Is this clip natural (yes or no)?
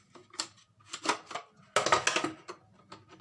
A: yes